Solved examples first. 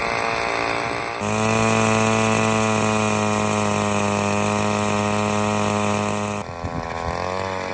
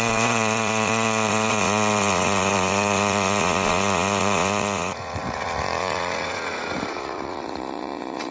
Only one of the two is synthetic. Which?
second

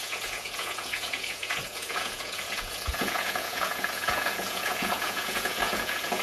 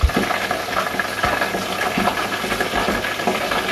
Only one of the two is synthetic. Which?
first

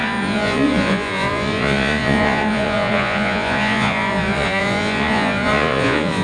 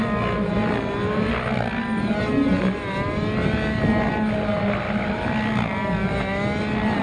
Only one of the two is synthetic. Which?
first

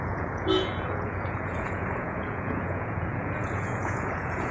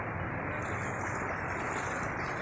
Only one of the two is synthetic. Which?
first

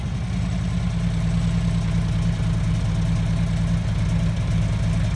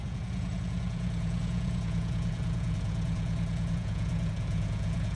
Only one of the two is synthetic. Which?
second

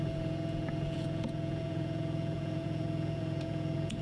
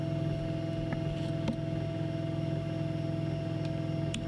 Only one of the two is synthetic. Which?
first